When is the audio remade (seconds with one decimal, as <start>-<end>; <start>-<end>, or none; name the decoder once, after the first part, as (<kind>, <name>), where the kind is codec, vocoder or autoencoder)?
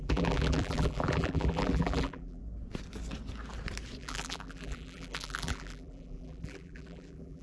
0.0-2.4 (vocoder, BigVGAN v2); 4.0-7.4